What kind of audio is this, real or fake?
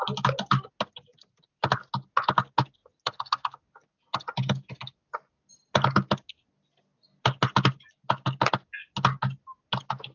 real